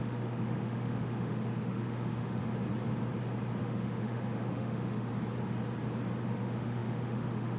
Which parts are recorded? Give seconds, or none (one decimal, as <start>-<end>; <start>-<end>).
2.4-3.6; 5.1-6.2